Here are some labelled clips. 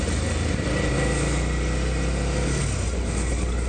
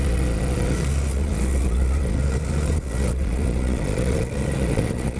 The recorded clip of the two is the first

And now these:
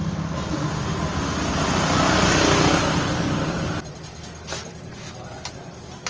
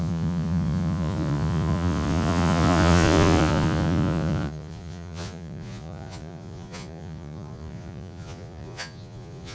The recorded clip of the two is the first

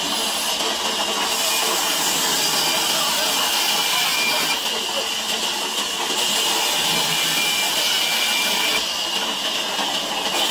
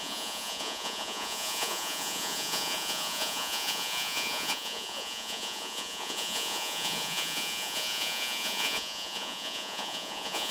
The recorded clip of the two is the first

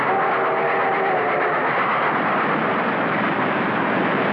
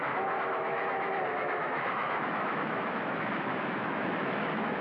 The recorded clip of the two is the first